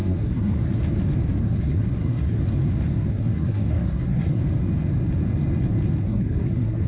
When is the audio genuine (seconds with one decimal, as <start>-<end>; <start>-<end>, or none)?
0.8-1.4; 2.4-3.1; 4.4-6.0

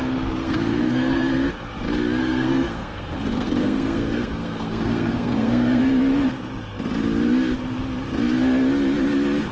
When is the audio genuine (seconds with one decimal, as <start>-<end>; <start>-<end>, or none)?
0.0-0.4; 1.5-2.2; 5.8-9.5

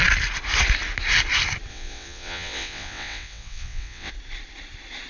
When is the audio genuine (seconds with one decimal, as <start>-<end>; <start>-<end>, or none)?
0.0-1.7; 4.1-5.1

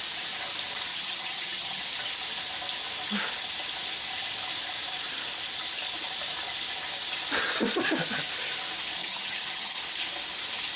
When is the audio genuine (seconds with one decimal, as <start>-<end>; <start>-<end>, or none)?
0.0-0.9; 1.8-9.0; 9.8-10.8

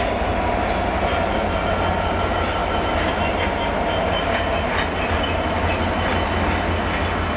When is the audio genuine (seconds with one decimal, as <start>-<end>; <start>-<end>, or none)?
0.0-7.4

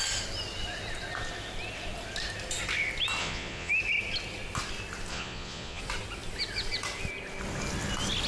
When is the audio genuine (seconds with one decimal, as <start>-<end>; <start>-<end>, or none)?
0.0-3.2; 3.7-5.1; 5.8-8.3

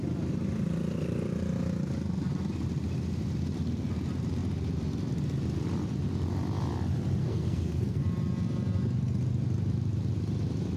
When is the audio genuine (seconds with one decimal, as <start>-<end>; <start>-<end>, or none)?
0.0-7.2; 8.0-10.8

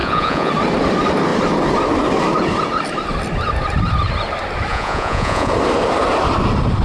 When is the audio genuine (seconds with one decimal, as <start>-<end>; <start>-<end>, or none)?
0.5-4.7; 5.5-6.8